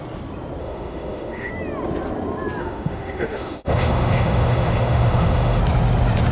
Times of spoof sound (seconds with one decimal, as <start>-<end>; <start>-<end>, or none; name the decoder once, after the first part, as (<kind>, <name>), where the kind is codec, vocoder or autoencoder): 0.6-1.5 (autoencoder, DAC-VAE); 2.6-5.6